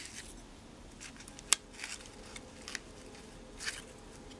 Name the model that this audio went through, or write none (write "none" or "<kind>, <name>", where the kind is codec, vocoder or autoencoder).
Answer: none